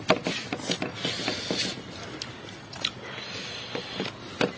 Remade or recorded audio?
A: recorded